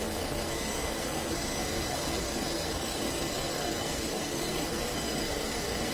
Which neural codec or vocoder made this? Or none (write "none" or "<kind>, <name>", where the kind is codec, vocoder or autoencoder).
codec, SNAC